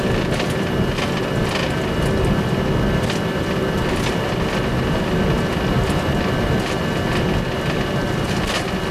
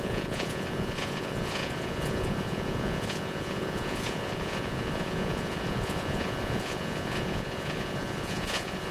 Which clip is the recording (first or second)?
first